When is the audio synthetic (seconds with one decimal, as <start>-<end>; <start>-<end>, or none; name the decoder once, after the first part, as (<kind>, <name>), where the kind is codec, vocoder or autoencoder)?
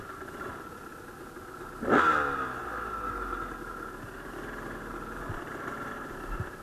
none